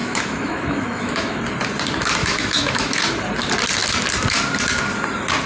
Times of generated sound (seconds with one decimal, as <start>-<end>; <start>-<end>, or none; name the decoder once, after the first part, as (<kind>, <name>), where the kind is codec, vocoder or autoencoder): 0.0-1.4 (autoencoder, DAC-VAE); 2.2-3.0